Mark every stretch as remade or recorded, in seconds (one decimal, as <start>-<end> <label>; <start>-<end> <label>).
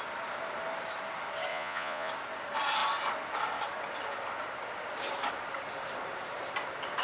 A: 0.0-1.5 recorded; 1.5-2.1 remade; 2.1-7.0 recorded